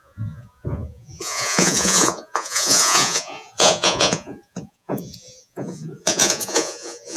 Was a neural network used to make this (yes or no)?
yes